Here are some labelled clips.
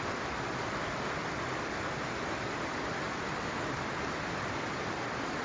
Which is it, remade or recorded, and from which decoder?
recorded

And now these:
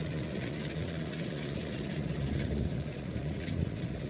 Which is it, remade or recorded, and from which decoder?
remade, vocoder, Vocos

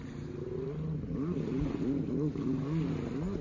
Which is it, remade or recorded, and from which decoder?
recorded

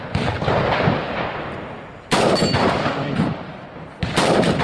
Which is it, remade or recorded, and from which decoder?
remade, vocoder, BigVGAN v2